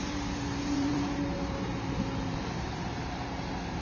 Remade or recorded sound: remade